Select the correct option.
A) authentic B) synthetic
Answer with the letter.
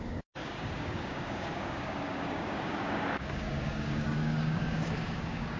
B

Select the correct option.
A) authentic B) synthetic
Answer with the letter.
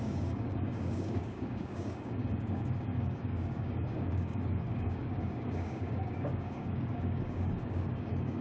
B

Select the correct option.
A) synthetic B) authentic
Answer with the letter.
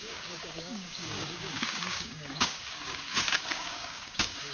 A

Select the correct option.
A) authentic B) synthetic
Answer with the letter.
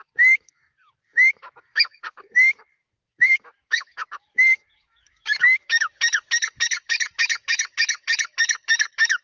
B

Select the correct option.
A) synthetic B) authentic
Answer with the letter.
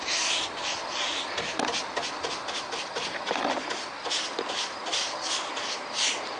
B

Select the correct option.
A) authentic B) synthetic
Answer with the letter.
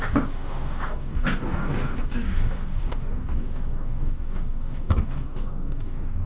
B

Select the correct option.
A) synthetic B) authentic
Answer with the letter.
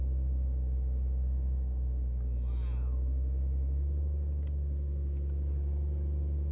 B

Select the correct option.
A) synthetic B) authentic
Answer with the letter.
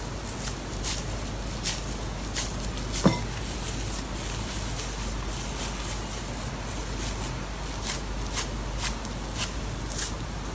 B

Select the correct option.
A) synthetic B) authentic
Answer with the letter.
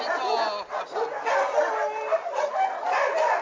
B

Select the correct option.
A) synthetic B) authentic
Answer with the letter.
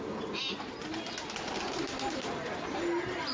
B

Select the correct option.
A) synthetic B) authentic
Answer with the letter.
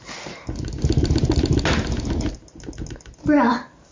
B